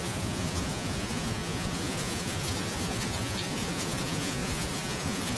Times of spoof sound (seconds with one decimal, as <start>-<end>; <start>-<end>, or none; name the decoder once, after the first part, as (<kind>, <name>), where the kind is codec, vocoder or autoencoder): 0.0-5.4 (vocoder, Vocos)